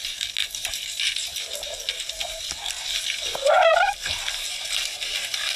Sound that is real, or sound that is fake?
real